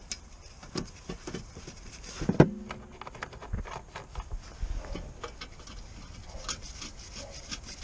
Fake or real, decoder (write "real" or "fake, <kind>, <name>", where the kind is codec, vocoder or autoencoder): real